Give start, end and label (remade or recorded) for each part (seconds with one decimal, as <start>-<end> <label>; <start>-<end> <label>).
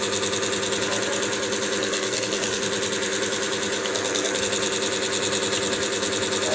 0.0-1.8 recorded; 1.8-2.6 remade; 2.6-3.8 recorded; 3.8-4.4 remade; 4.4-6.5 recorded